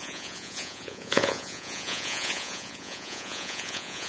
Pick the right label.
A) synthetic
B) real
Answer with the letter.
A